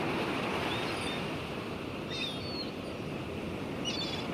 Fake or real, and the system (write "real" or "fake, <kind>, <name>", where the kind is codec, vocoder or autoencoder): real